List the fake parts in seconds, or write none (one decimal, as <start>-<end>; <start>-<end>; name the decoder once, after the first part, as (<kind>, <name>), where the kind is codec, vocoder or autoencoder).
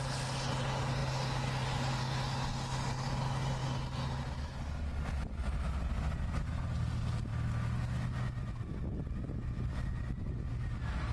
none